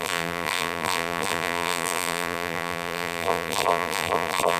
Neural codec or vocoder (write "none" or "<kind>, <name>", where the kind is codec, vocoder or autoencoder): vocoder, BigVGAN v2